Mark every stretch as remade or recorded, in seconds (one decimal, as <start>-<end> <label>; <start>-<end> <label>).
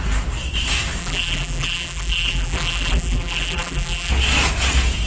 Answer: 0.0-1.0 recorded; 1.0-4.1 remade; 4.1-5.1 recorded